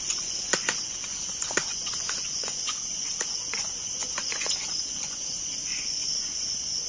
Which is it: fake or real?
fake